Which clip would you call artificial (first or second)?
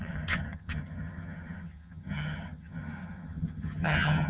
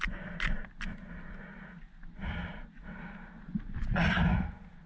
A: first